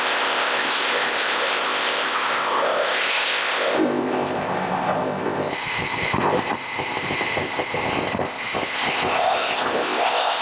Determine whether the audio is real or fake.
fake